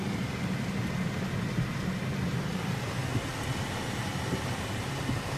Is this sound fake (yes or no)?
no